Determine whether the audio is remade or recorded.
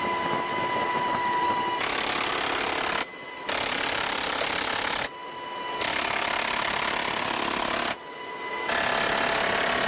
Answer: recorded